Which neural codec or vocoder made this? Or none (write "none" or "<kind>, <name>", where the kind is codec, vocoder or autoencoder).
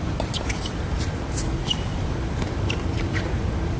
vocoder, BigVGAN v2